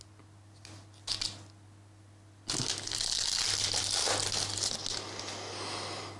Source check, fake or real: real